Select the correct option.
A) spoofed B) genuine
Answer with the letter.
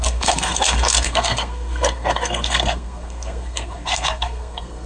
A